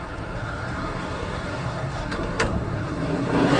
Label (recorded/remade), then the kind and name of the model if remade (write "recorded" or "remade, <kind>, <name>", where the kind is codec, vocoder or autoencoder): remade, codec, SNAC